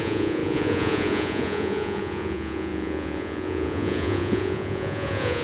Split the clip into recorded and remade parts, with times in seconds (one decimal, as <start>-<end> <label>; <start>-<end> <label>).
0.0-5.4 remade